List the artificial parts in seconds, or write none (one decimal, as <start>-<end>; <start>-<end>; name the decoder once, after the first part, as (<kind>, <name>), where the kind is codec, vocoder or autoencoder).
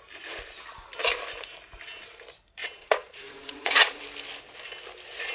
2.6-4.0 (vocoder, Vocos)